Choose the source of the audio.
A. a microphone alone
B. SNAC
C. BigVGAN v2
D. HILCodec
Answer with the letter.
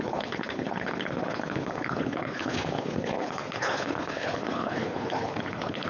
D